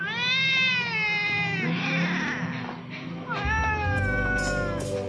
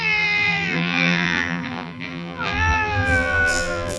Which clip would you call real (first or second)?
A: first